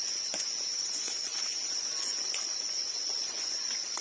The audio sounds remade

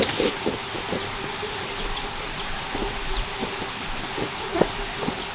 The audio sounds recorded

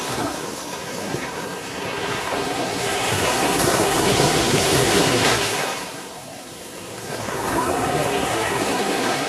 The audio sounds remade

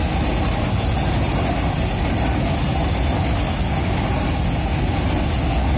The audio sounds recorded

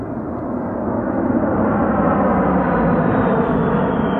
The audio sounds recorded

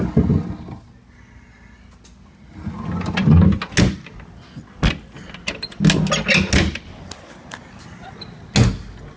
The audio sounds recorded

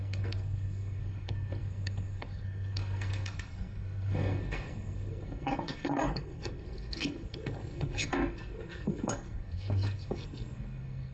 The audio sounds remade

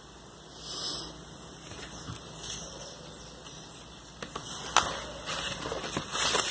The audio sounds recorded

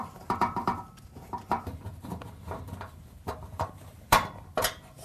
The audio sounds remade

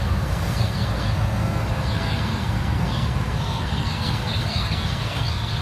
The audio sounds remade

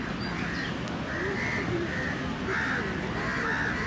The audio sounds recorded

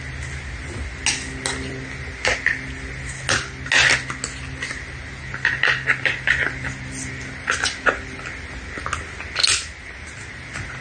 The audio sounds recorded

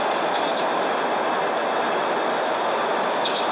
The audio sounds recorded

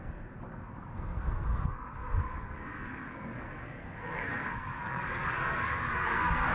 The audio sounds remade